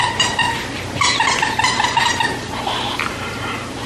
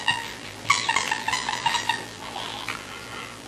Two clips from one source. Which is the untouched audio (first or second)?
first